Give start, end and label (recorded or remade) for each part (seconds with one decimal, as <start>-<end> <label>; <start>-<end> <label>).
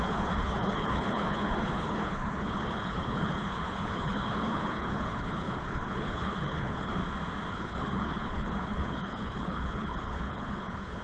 0.0-7.0 remade; 7.0-7.5 recorded; 7.5-11.0 remade